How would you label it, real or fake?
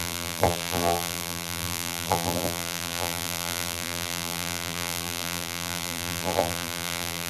fake